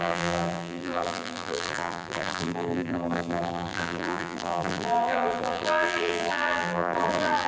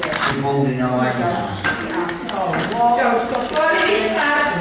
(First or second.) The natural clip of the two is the second